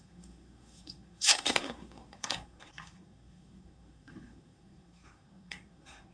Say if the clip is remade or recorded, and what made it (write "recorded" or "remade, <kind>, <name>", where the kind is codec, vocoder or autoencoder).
remade, codec, SNAC